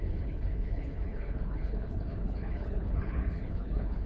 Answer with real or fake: fake